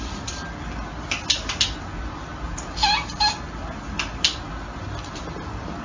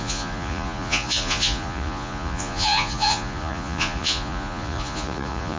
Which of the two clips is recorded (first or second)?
first